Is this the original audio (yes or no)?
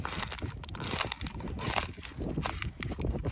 yes